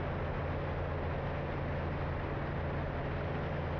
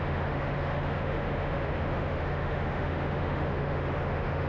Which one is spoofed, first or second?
second